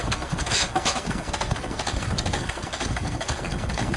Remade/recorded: remade